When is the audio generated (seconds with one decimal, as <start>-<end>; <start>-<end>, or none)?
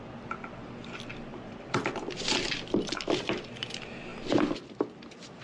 1.3-1.8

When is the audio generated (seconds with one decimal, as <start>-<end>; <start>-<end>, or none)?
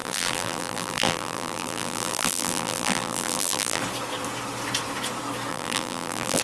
0.0-3.8; 5.5-6.4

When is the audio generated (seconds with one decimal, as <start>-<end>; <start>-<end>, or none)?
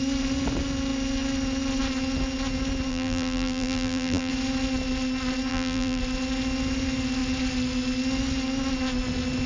2.9-4.3; 5.5-6.0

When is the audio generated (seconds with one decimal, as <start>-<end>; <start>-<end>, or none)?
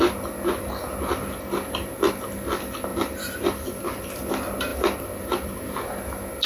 2.9-4.0; 4.7-5.7